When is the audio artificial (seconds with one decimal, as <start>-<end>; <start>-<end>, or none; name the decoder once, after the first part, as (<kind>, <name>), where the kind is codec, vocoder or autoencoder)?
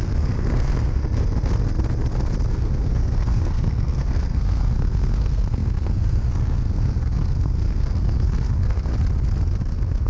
0.0-1.0 (codec, SNAC); 2.5-8.9; 9.6-10.1